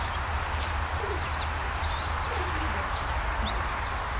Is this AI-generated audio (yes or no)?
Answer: no